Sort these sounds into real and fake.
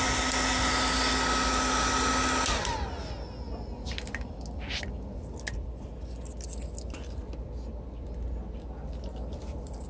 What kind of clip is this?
real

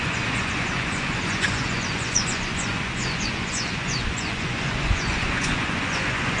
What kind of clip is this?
fake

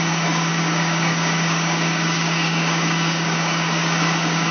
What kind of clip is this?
fake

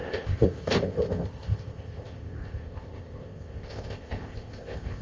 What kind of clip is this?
fake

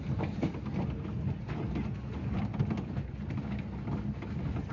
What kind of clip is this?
real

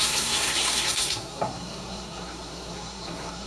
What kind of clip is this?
fake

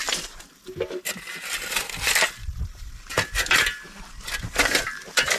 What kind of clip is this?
fake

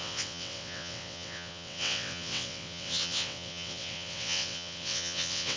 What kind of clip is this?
fake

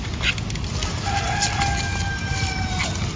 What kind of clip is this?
real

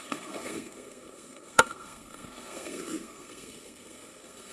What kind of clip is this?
fake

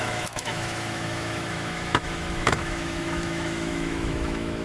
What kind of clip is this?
fake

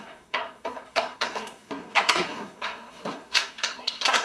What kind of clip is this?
fake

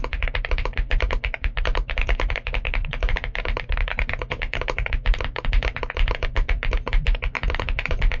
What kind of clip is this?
fake